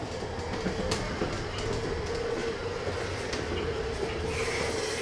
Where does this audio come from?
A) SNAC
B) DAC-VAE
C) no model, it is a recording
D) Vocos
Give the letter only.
C